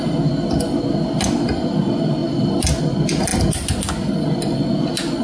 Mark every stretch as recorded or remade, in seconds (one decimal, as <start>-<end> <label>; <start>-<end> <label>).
0.0-2.2 recorded; 2.2-2.8 remade; 2.8-5.2 recorded